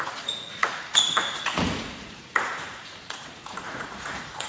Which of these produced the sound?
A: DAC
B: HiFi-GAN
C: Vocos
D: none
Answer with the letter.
C